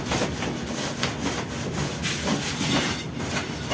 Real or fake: real